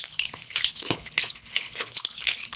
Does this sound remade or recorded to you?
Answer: remade